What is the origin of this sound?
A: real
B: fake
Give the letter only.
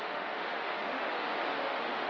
B